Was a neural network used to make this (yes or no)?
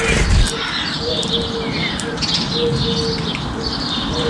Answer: no